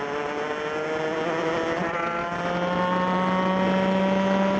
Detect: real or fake real